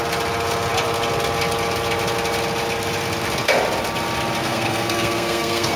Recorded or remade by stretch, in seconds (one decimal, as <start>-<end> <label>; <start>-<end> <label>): 0.0-4.4 recorded; 4.4-5.8 remade